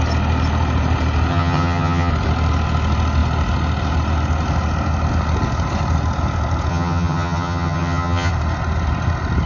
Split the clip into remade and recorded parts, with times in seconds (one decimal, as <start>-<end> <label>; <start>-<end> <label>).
0.0-1.3 recorded; 1.3-2.1 remade; 2.1-6.7 recorded; 6.7-8.3 remade; 8.3-9.5 recorded